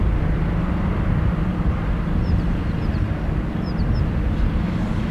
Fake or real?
real